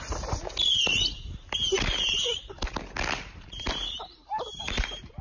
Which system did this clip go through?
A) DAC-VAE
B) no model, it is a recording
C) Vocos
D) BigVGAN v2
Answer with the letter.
B